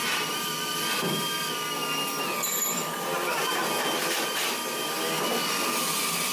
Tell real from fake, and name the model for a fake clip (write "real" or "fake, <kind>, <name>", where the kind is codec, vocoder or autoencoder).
real